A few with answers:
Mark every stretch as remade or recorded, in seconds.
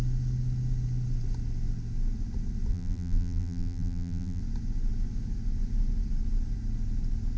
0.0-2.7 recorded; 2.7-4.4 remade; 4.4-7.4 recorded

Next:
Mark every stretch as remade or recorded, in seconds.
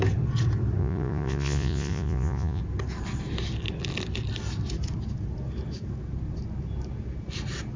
0.0-0.8 recorded; 0.8-2.6 remade; 2.6-7.8 recorded